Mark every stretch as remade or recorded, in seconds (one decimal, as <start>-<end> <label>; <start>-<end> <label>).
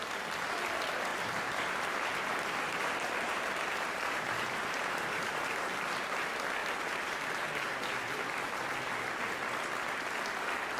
0.0-1.1 recorded; 1.1-5.6 remade; 5.6-6.6 recorded; 6.6-7.2 remade; 7.2-10.8 recorded